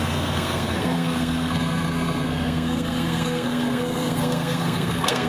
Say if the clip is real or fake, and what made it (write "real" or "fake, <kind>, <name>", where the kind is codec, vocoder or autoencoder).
fake, codec, SNAC